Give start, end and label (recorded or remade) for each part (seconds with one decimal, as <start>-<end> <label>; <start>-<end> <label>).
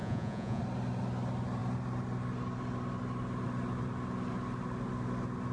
0.0-0.6 remade; 0.6-5.5 recorded